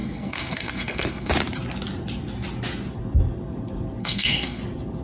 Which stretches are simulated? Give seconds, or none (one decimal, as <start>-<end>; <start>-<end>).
0.0-1.3; 4.0-4.6